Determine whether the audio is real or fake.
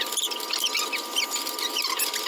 real